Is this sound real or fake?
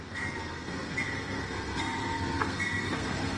fake